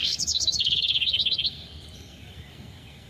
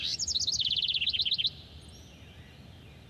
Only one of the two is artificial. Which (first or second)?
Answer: first